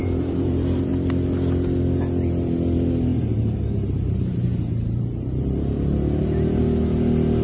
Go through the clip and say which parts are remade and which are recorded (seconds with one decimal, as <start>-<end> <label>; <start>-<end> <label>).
0.0-0.9 remade; 0.9-3.1 recorded; 3.1-6.2 remade; 6.2-7.4 recorded